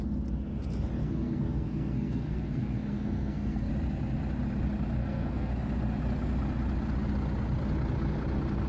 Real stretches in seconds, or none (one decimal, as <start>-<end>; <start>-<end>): 0.0-1.0; 3.7-5.0; 5.5-8.7